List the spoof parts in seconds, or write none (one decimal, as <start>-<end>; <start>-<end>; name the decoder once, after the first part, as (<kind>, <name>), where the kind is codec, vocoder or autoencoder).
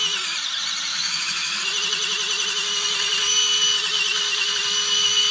0.9-1.6 (autoencoder, DAC-VAE)